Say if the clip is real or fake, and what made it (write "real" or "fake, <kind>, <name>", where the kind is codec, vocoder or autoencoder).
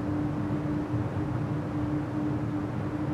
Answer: real